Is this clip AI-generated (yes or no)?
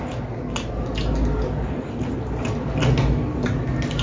no